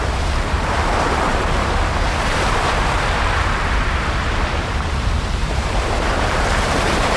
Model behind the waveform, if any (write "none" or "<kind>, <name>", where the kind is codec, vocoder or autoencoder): vocoder, BigVGAN v2